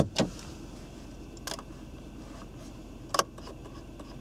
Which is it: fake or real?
real